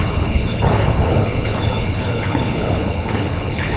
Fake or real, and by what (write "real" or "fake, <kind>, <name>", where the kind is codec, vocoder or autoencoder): fake, codec, HILCodec